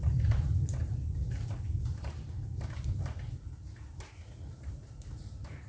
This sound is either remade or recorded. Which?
remade